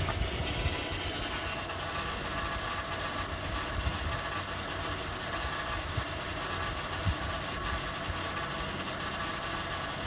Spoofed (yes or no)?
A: no